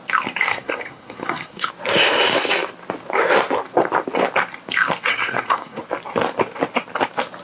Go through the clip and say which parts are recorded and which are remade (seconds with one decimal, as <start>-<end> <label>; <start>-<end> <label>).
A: 0.0-0.5 recorded; 0.5-1.7 remade; 1.7-5.1 recorded; 5.1-5.8 remade; 5.8-7.4 recorded